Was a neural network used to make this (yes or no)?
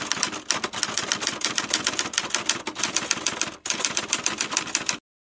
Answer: no